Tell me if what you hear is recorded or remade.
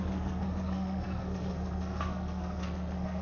remade